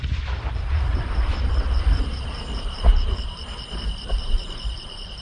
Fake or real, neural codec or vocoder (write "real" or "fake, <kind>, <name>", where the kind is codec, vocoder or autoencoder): fake, vocoder, BigVGAN v2